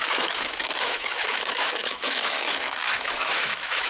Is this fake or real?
fake